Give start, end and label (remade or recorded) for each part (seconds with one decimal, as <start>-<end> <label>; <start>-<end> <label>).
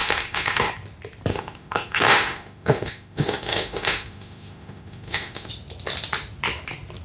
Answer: 0.0-0.7 remade; 0.7-1.3 recorded; 1.3-5.5 remade; 5.5-7.0 recorded